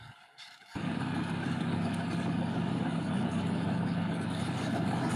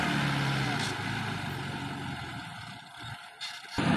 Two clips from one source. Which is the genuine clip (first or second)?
second